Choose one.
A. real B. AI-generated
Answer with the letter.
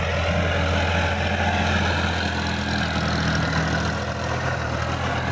A